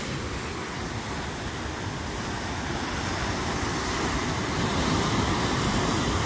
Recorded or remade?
recorded